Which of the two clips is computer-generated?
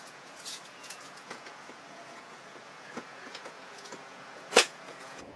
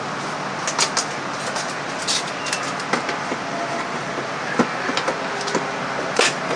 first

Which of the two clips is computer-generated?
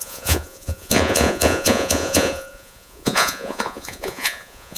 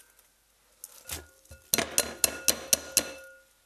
first